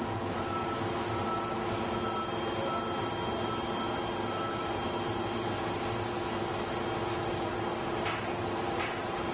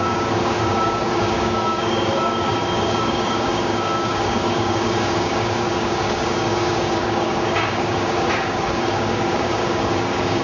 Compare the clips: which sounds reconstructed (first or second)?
second